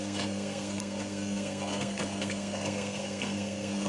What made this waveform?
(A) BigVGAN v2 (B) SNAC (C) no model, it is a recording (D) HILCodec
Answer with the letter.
B